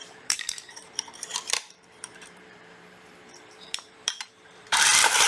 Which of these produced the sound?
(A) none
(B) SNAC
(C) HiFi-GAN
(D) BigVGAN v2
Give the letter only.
D